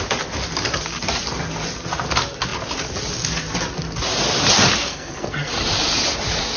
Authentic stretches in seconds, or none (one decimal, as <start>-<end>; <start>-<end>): 0.0-4.8; 5.5-6.6